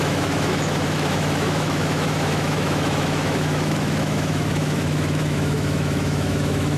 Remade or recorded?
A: remade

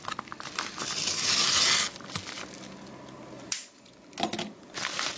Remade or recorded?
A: recorded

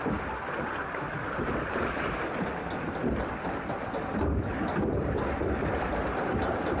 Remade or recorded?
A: remade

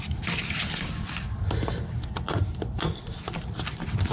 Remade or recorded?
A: recorded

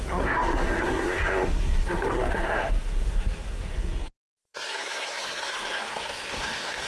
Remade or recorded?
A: remade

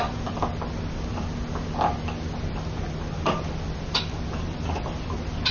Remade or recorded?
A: recorded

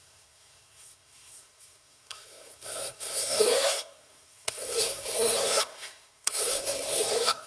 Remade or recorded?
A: remade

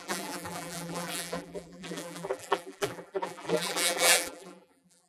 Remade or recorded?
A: remade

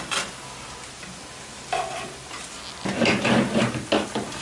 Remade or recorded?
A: recorded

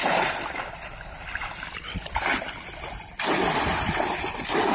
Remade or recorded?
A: recorded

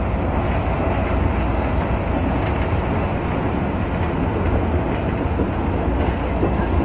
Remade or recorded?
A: recorded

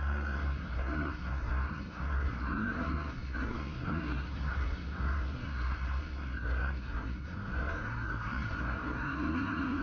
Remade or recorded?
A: remade